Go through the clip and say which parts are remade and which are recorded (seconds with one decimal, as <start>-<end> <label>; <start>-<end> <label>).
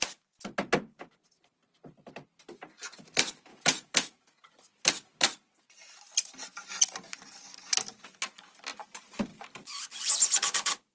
0.0-3.5 recorded; 3.5-4.4 remade; 4.4-10.9 recorded